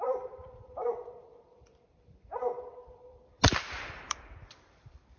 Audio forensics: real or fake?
fake